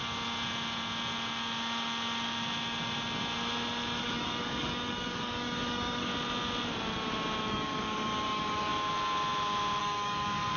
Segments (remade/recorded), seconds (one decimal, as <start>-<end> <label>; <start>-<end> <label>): 0.0-4.0 recorded; 4.0-6.1 remade; 6.1-7.5 recorded; 7.5-8.7 remade; 8.7-9.8 recorded; 9.8-10.6 remade